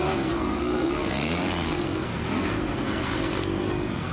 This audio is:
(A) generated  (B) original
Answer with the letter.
A